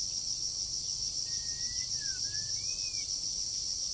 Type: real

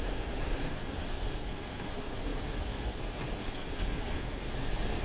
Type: fake